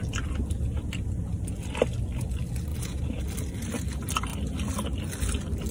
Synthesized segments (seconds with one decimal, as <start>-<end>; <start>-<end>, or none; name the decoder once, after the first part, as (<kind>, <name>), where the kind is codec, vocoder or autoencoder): 2.7-3.2 (vocoder, Vocos)